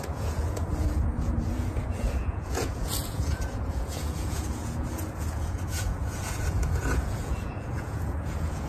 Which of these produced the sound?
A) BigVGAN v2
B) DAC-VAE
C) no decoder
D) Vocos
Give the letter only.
D